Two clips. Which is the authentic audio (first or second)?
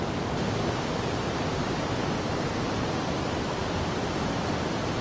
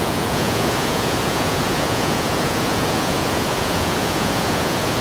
first